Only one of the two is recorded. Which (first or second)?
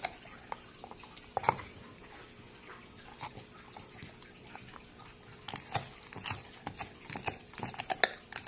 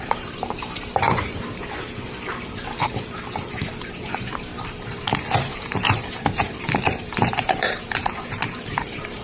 first